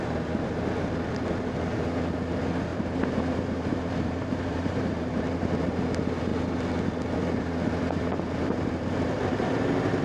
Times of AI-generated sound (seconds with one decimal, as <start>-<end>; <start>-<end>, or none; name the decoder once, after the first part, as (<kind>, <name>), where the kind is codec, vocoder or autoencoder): 2.7-5.6 (vocoder, BigVGAN v2); 8.4-9.6